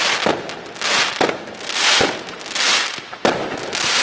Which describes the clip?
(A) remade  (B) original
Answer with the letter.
B